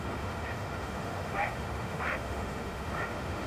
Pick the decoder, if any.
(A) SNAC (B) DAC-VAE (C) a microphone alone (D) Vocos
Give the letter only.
B